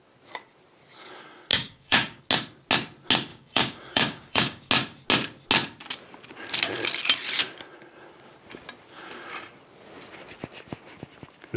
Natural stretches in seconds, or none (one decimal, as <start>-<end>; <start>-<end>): 0.0-1.5; 2.2-3.3; 4.7-11.6